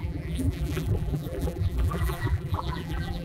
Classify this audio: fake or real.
fake